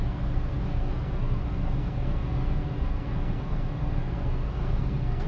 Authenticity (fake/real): fake